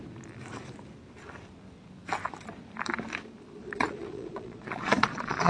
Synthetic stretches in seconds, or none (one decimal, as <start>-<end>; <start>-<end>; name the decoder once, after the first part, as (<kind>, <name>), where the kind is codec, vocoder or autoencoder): 3.6-5.5 (vocoder, Vocos)

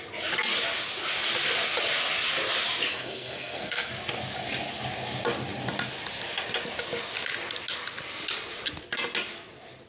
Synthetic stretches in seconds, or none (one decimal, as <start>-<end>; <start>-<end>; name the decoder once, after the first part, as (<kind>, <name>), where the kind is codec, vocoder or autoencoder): 2.9-3.9 (codec, SNAC)

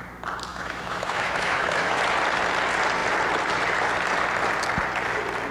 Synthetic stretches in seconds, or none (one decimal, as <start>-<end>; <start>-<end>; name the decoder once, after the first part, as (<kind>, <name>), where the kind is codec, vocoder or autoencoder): 0.5-2.0 (autoencoder, DAC-VAE)

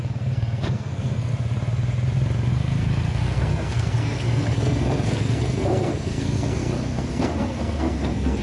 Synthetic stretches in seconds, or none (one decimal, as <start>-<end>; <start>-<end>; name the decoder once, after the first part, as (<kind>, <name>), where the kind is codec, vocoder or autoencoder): 0.0-1.3 (codec, SNAC); 2.5-8.4

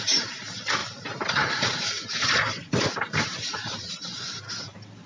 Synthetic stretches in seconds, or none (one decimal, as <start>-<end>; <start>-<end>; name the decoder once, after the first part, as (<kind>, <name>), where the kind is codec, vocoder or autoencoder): 0.8-3.9 (vocoder, BigVGAN v2)

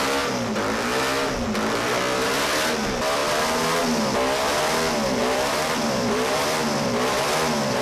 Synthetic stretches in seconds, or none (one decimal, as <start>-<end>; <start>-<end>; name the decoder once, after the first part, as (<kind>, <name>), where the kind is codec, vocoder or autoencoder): 5.2-7.3 (vocoder, BigVGAN v2)

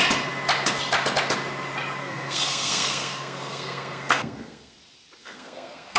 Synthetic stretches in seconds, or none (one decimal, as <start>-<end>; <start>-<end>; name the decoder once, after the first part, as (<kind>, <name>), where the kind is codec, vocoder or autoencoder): 2.0-4.8 (codec, SNAC); 5.2-6.0

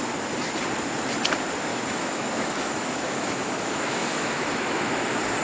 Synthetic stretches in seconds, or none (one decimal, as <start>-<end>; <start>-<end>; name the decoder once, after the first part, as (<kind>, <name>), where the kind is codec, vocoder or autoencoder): 1.7-4.9 (autoencoder, DAC-VAE)